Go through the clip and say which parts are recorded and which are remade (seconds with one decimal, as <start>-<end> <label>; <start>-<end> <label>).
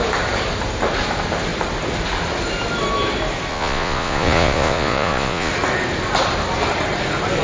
0.0-3.5 recorded; 3.5-5.5 remade; 5.5-7.4 recorded